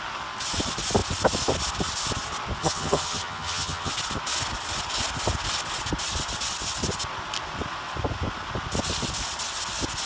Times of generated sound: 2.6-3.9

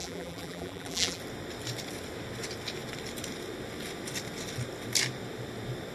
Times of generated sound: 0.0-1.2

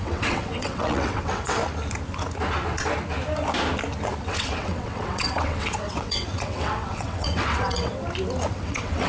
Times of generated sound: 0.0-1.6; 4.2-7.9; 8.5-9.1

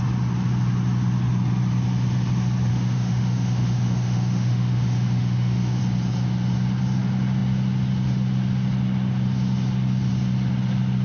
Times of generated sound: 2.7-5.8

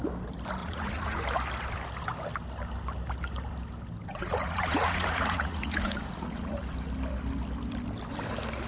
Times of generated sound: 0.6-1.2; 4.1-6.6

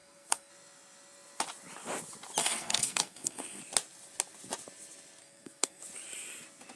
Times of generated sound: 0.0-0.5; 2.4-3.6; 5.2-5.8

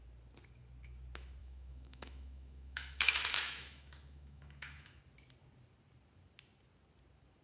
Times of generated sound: 1.4-5.0